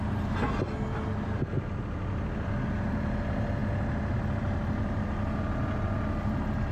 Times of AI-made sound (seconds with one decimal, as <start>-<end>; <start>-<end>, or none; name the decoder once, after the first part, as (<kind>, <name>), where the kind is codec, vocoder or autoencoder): none